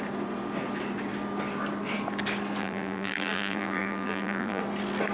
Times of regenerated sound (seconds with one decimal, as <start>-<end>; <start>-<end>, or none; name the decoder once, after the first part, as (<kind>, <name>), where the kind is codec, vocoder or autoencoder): 2.6-4.6 (vocoder, BigVGAN v2)